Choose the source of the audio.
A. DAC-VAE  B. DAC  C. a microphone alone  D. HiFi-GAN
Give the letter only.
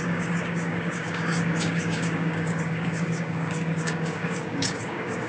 B